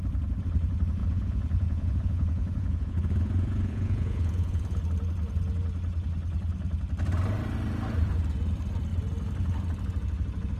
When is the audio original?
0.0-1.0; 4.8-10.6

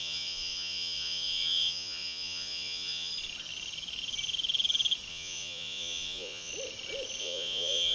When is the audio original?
3.1-5.1; 6.5-7.2

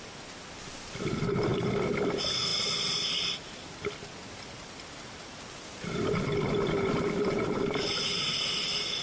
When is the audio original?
0.0-9.0

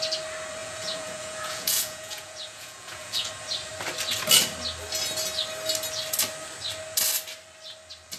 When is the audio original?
0.0-0.6; 3.3-8.2

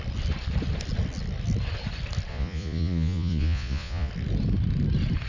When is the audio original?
0.0-2.3; 4.1-5.3

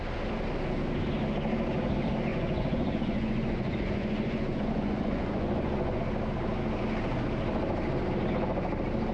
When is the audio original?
0.0-2.3; 6.0-9.1

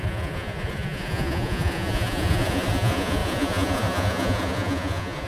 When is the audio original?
none

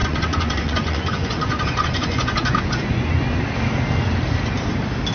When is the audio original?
3.1-5.1